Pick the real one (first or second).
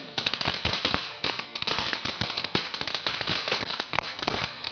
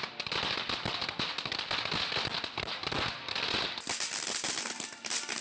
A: second